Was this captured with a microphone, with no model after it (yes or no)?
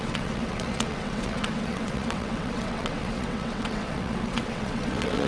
no